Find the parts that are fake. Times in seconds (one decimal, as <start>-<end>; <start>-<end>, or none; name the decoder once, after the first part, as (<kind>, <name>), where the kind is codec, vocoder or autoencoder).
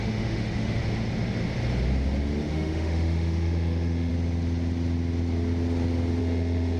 0.0-0.8 (autoencoder, DAC-VAE); 2.5-4.1; 6.2-6.8